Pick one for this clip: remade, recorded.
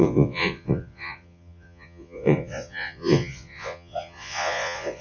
remade